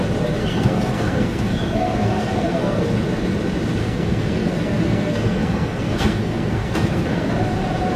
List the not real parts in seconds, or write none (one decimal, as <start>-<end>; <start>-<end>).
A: 0.4-2.8; 3.8-7.3